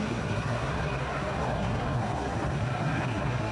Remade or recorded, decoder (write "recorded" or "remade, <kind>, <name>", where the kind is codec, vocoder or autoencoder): remade, codec, SNAC